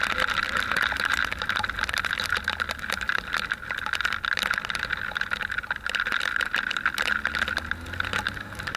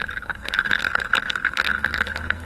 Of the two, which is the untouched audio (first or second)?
first